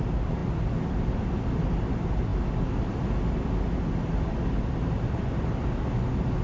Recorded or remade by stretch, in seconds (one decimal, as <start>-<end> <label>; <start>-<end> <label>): 0.0-6.4 recorded